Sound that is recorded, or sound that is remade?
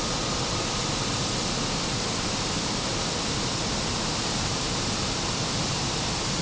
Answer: remade